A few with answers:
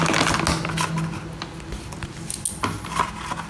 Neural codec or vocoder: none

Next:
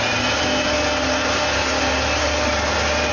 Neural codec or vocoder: none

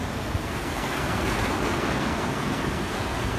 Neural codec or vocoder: codec, SNAC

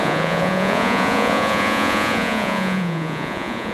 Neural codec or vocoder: vocoder, Vocos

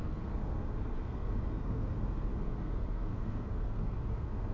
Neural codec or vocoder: codec, SNAC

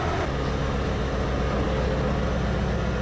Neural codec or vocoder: none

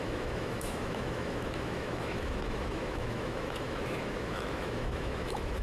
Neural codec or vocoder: autoencoder, DAC-VAE